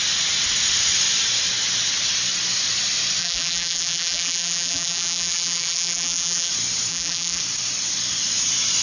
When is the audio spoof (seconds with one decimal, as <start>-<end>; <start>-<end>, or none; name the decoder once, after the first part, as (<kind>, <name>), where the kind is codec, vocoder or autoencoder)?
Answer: 3.2-6.5 (vocoder, BigVGAN v2); 6.9-7.4